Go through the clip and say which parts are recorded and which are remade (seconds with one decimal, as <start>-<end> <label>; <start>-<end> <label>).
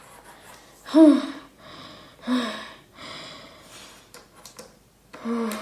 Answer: 0.0-5.6 recorded